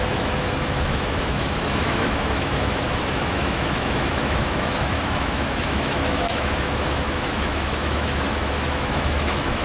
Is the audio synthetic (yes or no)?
yes